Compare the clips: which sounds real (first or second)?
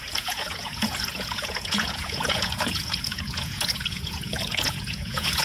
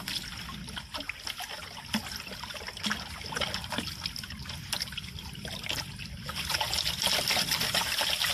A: second